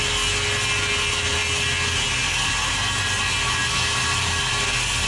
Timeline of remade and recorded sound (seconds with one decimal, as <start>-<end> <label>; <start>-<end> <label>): 0.0-5.1 recorded